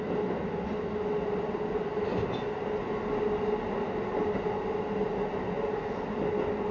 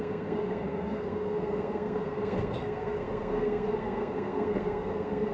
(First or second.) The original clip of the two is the first